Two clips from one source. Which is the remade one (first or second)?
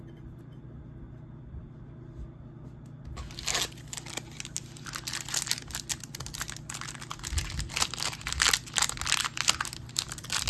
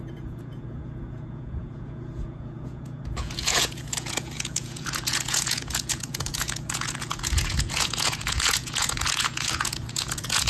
second